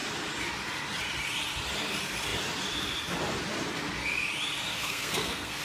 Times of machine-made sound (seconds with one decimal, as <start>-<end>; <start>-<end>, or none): 4.7-5.6